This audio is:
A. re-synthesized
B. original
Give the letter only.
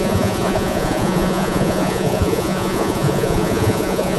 A